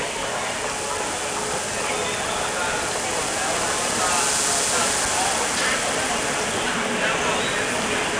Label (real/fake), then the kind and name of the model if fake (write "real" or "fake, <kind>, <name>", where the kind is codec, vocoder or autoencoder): real